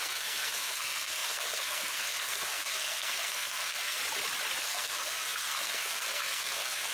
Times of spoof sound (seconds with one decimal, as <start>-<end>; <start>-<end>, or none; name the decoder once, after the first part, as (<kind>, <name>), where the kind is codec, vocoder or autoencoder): 0.0-4.0 (codec, SNAC); 4.6-6.9